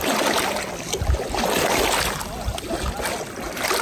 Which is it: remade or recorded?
recorded